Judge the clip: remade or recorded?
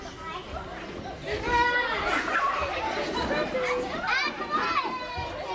recorded